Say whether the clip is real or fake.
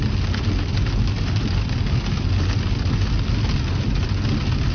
real